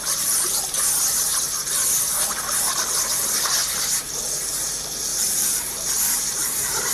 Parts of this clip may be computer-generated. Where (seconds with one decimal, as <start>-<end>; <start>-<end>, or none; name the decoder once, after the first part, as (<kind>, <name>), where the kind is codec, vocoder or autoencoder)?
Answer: 5.1-6.9 (vocoder, BigVGAN v2)